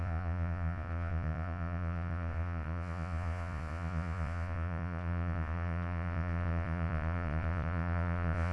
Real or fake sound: fake